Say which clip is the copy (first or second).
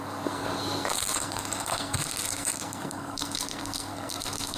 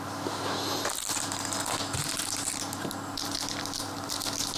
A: first